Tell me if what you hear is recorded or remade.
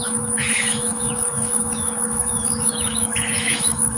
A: remade